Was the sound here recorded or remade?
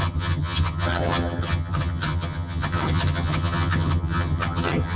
remade